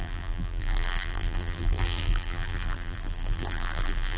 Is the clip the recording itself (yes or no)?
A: no